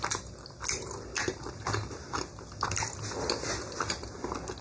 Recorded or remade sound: recorded